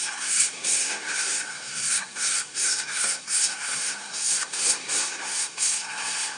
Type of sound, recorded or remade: remade